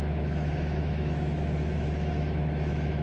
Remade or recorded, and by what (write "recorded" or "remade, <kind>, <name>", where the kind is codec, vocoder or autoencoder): remade, autoencoder, DAC-VAE